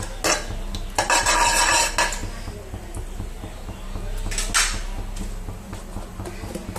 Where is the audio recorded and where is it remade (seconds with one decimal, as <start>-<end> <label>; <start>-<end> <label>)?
0.0-6.8 recorded